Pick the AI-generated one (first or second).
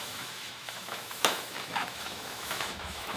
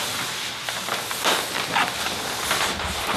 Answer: first